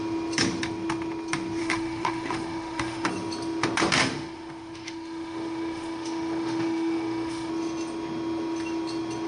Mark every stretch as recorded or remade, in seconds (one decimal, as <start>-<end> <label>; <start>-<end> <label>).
0.0-1.6 recorded; 1.6-3.1 remade; 3.1-4.0 recorded; 4.0-7.5 remade; 7.5-9.3 recorded

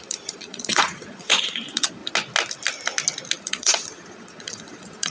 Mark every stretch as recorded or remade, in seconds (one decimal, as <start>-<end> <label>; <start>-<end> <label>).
0.0-2.0 remade; 2.0-3.4 recorded; 3.4-5.1 remade

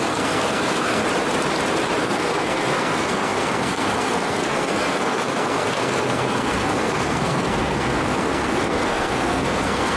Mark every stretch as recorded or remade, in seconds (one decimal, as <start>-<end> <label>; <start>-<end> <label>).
0.0-1.0 remade; 1.0-2.0 recorded; 2.0-10.0 remade

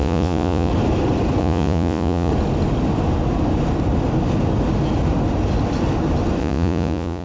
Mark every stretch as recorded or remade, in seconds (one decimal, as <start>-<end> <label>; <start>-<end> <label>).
0.0-0.7 remade; 0.7-1.4 recorded; 1.4-2.3 remade; 2.3-6.4 recorded; 6.4-7.2 remade

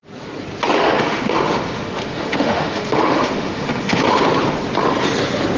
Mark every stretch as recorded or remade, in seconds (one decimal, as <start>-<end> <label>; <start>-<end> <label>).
0.0-0.8 recorded; 0.8-4.2 remade; 4.2-5.6 recorded

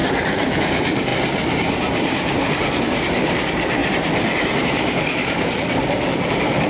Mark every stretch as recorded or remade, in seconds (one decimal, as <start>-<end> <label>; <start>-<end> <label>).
0.0-3.8 remade; 3.8-4.6 recorded; 4.6-6.7 remade